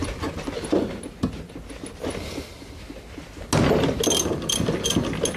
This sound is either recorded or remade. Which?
recorded